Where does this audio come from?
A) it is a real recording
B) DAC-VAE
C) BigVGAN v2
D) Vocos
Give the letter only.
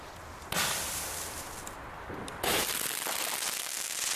A